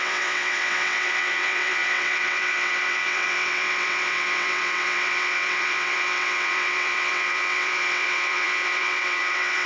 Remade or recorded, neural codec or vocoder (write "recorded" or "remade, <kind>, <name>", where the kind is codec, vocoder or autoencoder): remade, vocoder, WaveNeXt